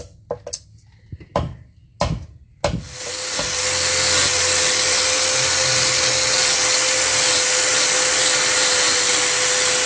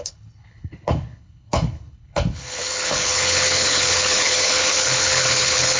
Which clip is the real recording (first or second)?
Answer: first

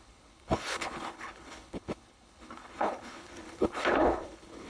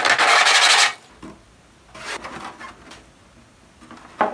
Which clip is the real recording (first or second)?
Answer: second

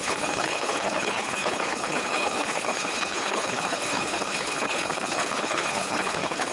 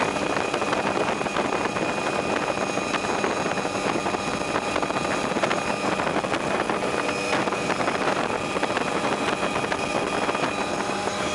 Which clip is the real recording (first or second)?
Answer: second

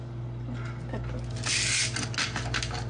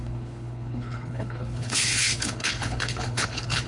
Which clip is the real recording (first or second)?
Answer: first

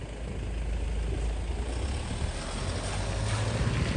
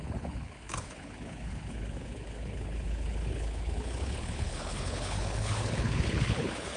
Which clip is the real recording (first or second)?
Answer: first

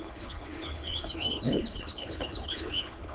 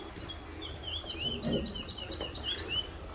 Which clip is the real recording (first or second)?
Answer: second